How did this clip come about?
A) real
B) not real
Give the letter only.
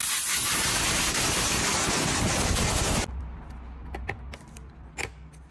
A